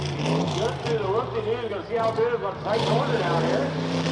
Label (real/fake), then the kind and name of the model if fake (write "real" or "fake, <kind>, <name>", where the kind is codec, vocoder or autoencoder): fake, vocoder, BigVGAN v2